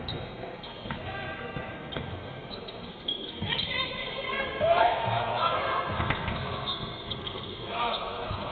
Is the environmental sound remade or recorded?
remade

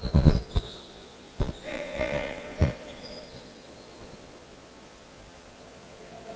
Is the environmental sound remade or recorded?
remade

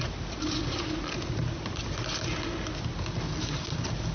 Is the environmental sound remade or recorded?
recorded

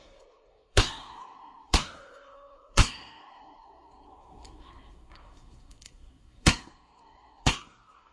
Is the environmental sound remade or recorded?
remade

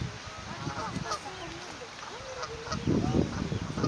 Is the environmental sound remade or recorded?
recorded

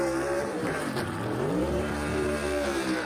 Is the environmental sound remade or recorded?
remade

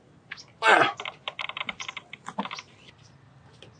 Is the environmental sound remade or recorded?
recorded